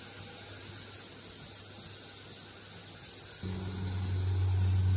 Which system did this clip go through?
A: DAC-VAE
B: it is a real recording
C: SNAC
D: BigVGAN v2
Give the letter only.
B